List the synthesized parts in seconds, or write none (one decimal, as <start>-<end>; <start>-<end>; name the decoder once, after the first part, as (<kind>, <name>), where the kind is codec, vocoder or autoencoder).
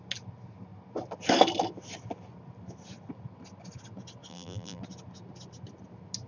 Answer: 4.3-4.8 (vocoder, BigVGAN v2)